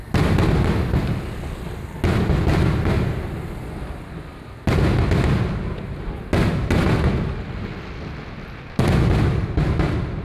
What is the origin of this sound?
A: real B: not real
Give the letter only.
A